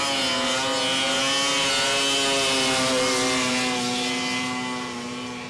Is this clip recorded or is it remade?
recorded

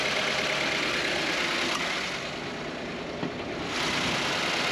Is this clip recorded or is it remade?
recorded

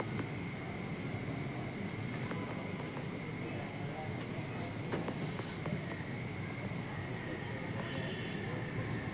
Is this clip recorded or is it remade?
recorded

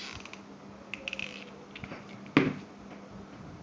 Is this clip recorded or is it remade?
recorded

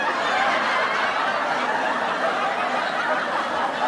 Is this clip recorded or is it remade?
recorded